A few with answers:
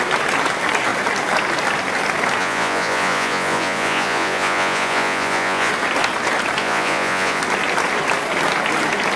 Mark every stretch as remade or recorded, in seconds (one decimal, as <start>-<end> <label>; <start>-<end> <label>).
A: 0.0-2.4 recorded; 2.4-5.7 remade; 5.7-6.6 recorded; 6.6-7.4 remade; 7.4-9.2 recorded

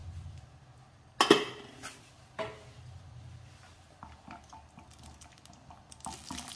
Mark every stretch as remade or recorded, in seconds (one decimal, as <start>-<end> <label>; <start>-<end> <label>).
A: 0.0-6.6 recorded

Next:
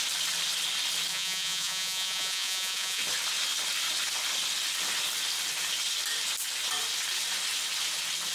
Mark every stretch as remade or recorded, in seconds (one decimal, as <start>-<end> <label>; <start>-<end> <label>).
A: 0.0-1.1 recorded; 1.1-3.0 remade; 3.0-8.3 recorded